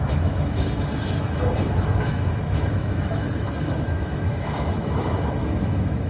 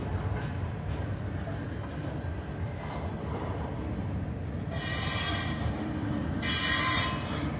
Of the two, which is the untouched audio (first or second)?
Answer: second